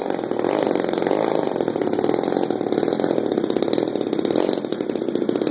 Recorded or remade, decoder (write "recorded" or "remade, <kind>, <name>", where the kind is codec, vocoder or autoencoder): recorded